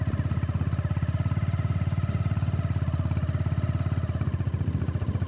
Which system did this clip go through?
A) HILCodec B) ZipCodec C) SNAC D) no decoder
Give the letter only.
D